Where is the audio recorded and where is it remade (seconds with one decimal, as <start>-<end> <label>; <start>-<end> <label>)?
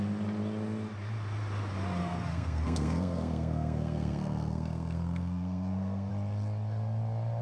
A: 0.0-2.0 recorded; 2.0-6.1 remade; 6.1-7.4 recorded